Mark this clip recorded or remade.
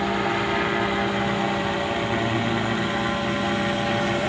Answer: recorded